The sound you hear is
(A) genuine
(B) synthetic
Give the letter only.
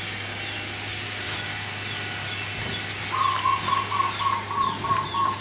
A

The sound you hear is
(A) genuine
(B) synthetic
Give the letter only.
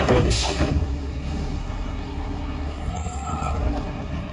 B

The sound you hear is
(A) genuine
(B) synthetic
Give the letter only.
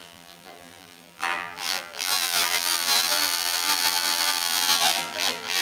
B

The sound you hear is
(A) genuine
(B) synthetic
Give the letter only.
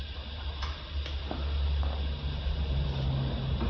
A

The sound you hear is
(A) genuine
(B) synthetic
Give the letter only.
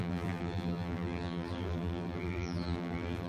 B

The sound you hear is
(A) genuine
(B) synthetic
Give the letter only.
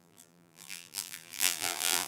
B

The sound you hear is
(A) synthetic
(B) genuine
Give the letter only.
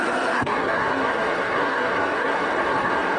A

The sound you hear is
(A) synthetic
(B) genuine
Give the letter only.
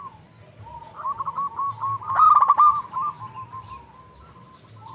B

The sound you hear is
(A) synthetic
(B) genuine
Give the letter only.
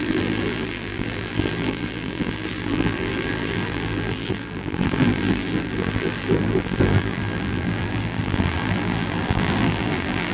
A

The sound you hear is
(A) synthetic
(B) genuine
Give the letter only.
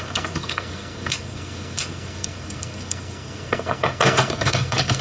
A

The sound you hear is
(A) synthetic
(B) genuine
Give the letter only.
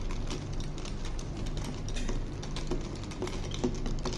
B